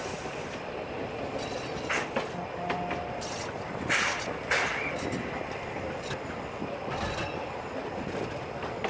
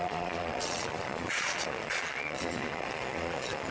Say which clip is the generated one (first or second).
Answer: second